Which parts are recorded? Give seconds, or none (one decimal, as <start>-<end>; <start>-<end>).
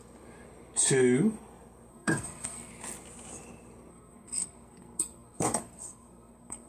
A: 0.0-1.9; 2.7-3.9